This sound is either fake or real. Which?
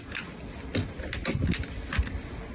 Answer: real